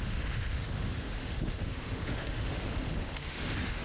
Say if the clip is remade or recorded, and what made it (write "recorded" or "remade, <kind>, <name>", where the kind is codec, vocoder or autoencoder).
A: remade, autoencoder, DAC-VAE